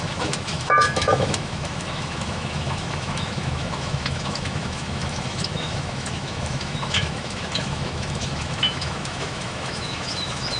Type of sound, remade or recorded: remade